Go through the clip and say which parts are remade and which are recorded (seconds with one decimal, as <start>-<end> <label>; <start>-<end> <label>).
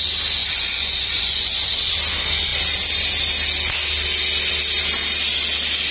0.0-0.4 recorded; 0.4-1.9 remade; 1.9-5.9 recorded